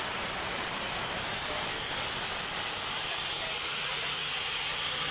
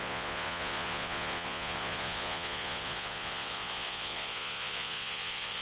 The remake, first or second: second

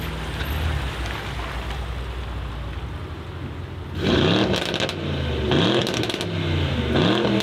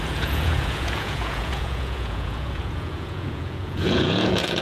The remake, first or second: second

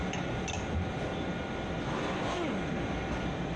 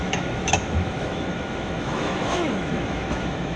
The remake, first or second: second